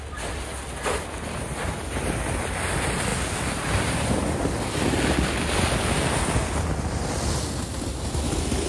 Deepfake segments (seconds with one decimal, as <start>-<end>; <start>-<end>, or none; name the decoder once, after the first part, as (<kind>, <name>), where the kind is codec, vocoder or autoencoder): none